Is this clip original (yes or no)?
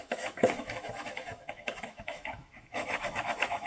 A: no